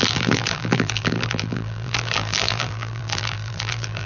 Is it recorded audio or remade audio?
remade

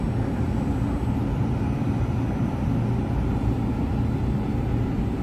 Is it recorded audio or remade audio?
recorded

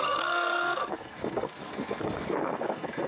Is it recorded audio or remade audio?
remade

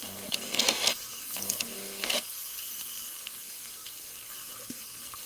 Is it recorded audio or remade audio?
remade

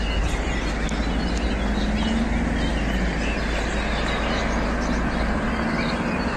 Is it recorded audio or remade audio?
recorded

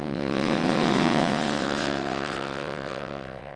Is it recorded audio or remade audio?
remade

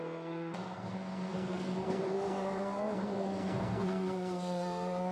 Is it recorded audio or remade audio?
remade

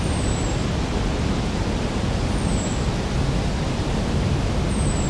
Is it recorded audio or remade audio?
recorded